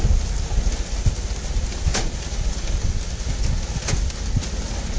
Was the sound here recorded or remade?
recorded